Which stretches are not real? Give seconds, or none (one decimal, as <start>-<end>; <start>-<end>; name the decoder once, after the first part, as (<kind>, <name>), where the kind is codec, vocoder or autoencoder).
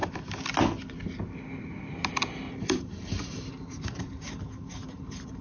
2.5-5.4 (vocoder, BigVGAN v2)